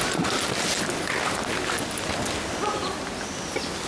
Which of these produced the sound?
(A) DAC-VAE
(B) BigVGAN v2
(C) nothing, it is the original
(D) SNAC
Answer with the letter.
C